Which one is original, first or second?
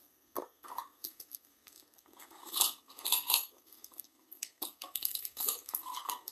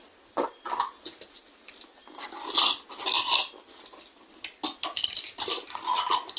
second